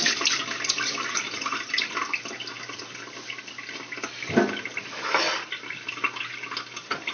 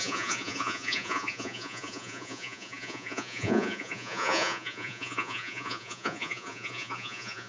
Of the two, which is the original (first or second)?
first